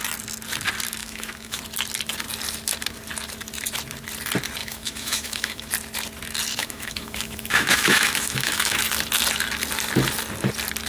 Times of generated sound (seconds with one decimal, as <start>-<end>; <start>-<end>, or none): 1.0-1.6; 4.6-5.7; 6.6-8.8